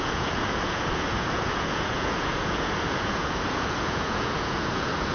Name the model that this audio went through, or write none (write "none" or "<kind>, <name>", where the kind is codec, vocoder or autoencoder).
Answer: vocoder, Vocos